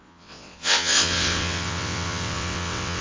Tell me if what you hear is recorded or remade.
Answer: remade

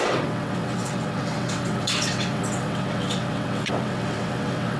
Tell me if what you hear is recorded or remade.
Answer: remade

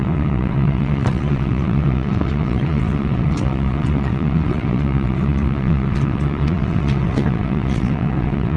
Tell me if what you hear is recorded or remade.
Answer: remade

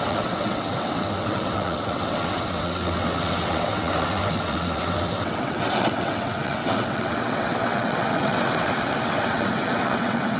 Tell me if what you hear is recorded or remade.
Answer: remade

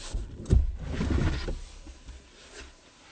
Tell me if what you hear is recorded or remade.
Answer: recorded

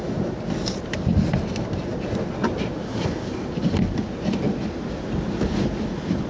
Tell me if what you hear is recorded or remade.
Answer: recorded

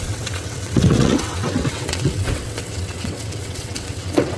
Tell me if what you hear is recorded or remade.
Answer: remade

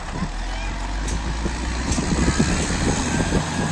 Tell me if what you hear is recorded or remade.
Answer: recorded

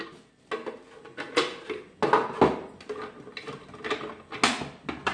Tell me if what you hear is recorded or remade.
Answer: recorded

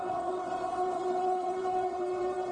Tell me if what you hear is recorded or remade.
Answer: remade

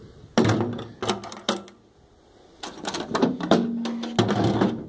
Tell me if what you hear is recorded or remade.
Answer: recorded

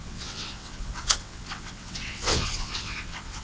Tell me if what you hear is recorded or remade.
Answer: remade